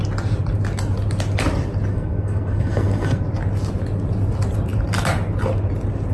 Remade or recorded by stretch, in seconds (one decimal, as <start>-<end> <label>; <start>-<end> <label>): 0.0-1.9 recorded; 1.9-3.2 remade; 3.2-6.1 recorded